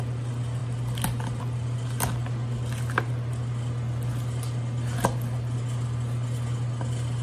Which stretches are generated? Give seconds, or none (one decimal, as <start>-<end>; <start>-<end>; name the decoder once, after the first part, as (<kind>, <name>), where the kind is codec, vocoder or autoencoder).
none